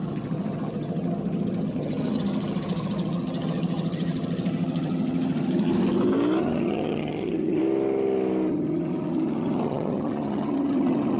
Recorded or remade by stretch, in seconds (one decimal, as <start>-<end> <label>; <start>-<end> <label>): 0.0-5.7 remade; 5.7-6.4 recorded; 6.4-7.6 remade; 7.6-8.5 recorded; 8.5-11.2 remade